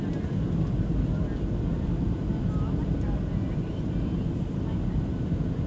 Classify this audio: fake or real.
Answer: real